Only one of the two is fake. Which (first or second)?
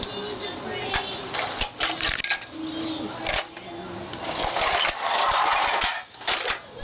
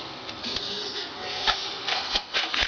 second